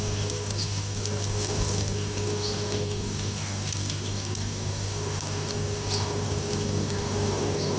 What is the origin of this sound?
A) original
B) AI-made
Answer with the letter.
B